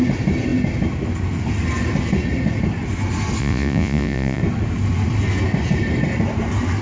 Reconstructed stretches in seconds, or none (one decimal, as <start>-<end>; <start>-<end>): 3.4-4.4